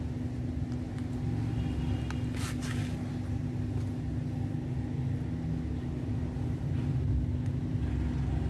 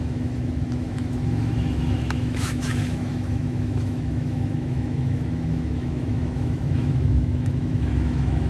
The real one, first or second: first